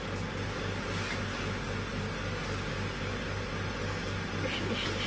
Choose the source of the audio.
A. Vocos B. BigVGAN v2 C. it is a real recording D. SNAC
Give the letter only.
C